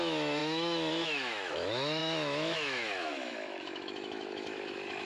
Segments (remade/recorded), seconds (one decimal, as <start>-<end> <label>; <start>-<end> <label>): 0.0-5.1 remade